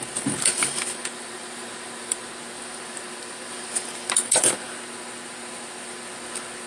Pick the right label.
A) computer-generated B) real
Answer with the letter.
B